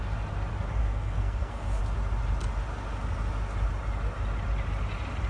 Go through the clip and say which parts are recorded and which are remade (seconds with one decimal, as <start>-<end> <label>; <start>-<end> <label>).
0.0-0.8 recorded; 0.8-1.8 remade; 1.8-5.3 recorded